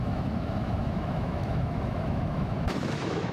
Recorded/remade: remade